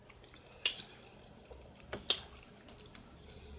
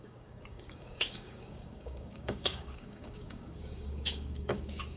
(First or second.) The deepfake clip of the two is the second